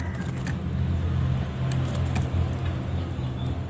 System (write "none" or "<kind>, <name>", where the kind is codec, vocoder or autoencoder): none